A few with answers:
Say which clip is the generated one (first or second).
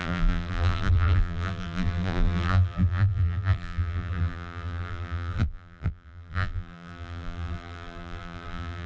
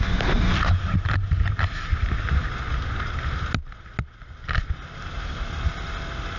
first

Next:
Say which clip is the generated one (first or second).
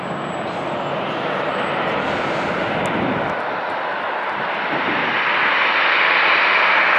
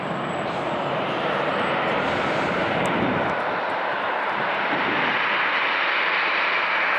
second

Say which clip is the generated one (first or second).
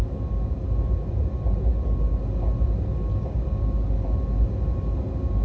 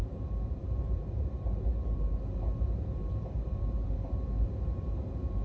second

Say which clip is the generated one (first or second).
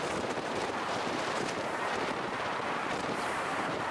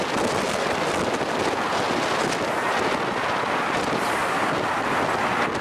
first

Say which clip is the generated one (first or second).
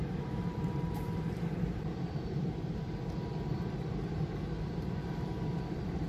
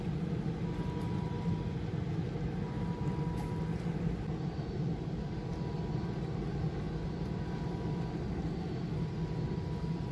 first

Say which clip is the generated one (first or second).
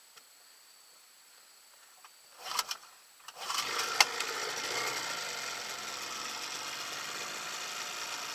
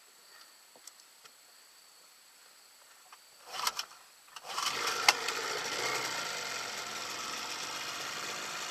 second